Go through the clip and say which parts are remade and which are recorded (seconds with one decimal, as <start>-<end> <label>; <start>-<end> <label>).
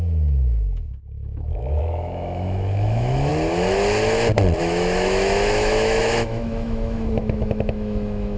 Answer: 0.0-3.3 remade; 3.3-4.6 recorded; 4.6-8.4 remade